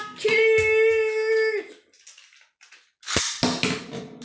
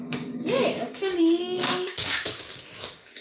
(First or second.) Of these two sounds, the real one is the first